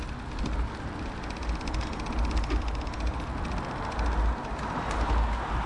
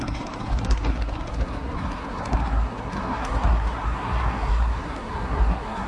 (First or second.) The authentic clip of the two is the first